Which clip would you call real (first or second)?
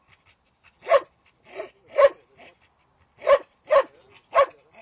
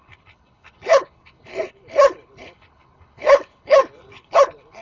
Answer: first